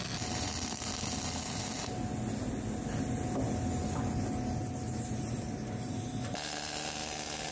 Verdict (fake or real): real